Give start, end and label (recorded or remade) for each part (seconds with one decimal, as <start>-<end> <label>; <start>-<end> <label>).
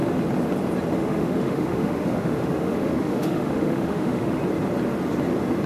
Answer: 0.0-1.0 recorded; 1.0-4.4 remade; 4.4-5.7 recorded